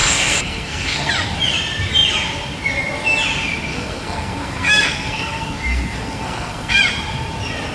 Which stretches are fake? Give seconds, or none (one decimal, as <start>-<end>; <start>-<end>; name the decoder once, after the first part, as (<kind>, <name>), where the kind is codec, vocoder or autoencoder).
0.0-1.1 (codec, SNAC); 3.7-6.8

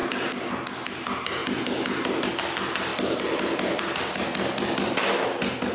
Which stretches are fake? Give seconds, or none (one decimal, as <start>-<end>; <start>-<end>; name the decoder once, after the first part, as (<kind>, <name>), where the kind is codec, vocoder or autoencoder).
none

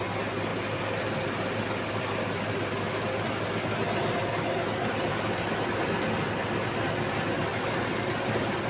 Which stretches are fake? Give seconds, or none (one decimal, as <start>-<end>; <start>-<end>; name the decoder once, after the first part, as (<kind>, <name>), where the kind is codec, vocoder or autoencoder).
none